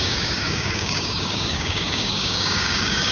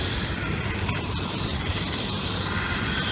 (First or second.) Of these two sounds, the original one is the second